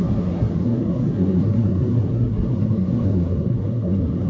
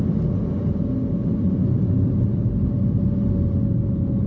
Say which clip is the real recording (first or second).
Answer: second